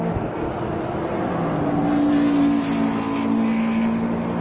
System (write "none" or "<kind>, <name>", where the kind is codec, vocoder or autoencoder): none